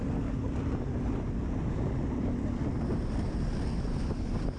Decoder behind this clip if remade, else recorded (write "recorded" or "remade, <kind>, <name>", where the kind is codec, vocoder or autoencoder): recorded